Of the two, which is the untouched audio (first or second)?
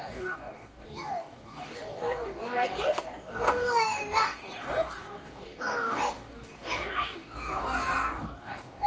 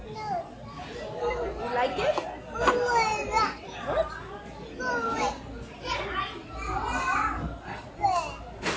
second